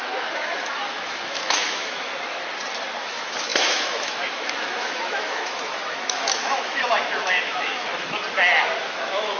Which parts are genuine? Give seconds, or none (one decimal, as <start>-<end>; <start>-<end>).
2.1-3.0; 8.2-8.8